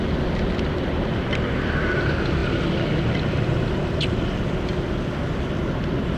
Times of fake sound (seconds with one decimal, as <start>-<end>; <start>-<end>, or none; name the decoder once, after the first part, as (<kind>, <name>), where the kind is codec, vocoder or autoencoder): none